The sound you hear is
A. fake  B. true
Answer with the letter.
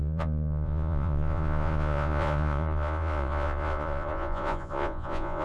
A